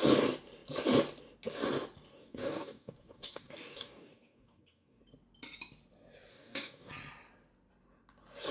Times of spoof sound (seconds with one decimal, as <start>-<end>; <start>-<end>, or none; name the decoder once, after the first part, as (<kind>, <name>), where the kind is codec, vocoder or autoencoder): 2.1-5.0 (codec, DAC); 6.3-6.9